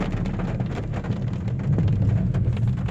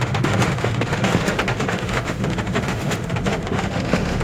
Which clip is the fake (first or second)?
second